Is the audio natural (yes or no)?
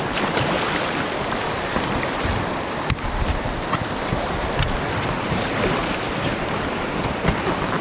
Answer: yes